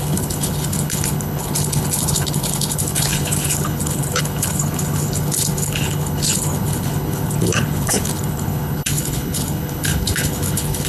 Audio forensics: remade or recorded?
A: remade